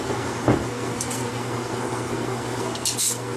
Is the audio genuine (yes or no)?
no